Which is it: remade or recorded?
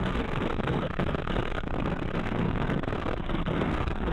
remade